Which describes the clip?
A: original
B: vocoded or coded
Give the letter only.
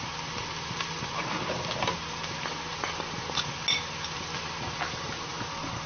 A